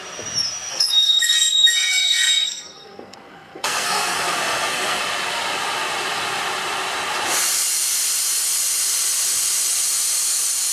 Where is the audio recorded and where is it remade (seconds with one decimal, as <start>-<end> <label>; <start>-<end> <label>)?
0.0-0.7 recorded; 0.7-5.0 remade; 5.0-10.7 recorded